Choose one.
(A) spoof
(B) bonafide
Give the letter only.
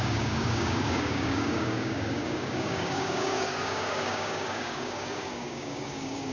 A